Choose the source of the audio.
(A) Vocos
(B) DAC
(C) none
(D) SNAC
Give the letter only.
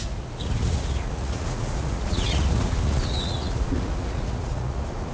A